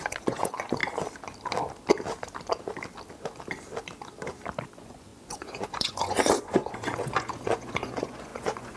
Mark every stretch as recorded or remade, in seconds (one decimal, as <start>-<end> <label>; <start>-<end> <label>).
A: 0.0-0.8 remade; 0.8-4.6 recorded; 4.6-8.8 remade